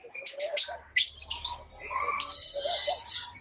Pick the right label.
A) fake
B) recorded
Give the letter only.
B